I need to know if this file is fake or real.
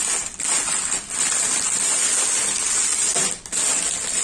real